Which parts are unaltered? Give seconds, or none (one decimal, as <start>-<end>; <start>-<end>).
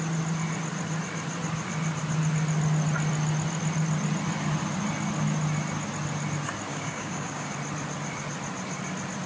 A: 0.0-6.7; 7.5-9.3